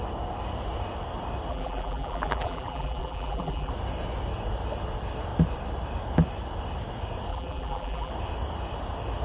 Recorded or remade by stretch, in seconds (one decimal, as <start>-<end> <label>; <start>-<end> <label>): 0.0-1.5 recorded; 1.5-3.7 remade; 3.7-7.3 recorded; 7.3-8.1 remade; 8.1-9.2 recorded